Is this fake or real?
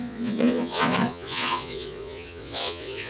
fake